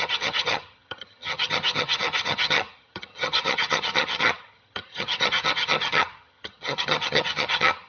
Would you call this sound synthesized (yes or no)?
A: yes